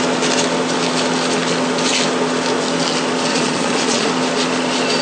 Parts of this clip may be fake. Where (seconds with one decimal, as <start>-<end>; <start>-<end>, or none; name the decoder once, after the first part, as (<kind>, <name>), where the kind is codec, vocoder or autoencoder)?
3.3-4.1 (vocoder, Vocos)